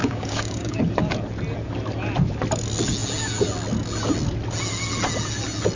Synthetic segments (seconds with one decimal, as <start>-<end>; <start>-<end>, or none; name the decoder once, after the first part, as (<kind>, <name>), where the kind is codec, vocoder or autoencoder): 0.0-0.8 (codec, DAC)